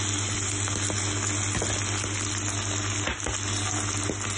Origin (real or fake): real